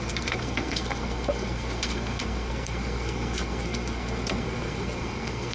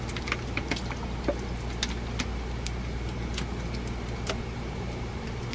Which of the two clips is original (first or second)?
second